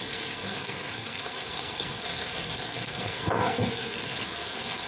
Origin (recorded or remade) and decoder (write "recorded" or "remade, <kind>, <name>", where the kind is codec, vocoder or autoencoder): remade, codec, SNAC